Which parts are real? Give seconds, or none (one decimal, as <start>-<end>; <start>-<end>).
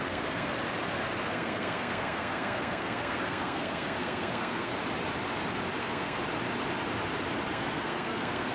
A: 0.5-1.2; 4.7-5.8; 6.2-7.5